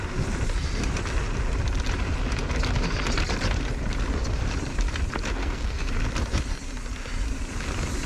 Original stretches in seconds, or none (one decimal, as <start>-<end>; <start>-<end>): 0.0-5.4; 5.9-8.1

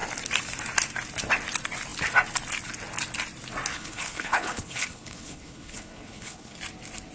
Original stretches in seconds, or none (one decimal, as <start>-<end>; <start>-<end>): 0.0-3.7; 6.6-7.1

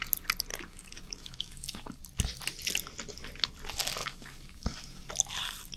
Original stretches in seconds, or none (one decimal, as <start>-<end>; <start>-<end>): 0.0-0.5; 2.0-4.0; 5.1-5.8